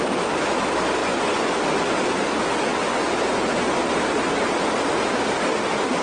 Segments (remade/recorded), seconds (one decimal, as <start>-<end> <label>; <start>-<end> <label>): 0.0-1.0 recorded; 1.0-1.5 remade; 1.5-6.0 recorded